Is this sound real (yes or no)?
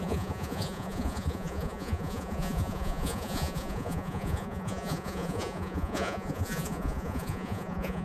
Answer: no